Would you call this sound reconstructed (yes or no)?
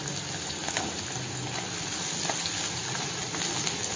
no